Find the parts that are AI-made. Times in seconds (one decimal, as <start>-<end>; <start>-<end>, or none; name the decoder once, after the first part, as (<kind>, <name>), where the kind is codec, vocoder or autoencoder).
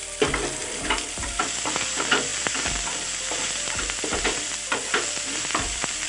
0.6-1.4 (vocoder, BigVGAN v2); 2.3-6.1